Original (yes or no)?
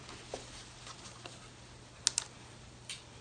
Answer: yes